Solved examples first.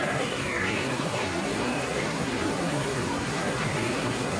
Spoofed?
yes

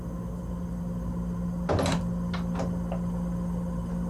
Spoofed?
no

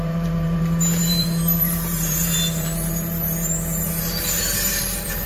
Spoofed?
yes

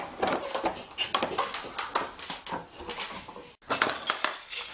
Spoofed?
no